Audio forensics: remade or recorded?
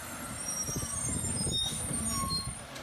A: recorded